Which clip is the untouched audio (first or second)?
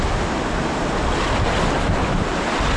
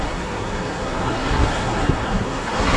first